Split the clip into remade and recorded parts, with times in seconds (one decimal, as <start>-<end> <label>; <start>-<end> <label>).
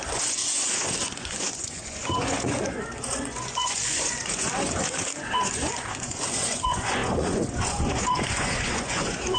0.0-9.4 remade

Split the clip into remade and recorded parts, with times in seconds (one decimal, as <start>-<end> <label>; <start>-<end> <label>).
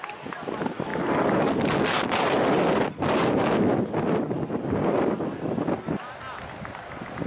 0.0-7.3 recorded